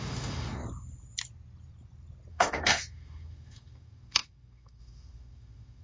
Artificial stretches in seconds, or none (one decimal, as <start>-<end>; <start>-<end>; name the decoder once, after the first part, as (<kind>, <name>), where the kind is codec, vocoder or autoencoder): 0.0-0.6 (autoencoder, DAC-VAE); 2.3-5.8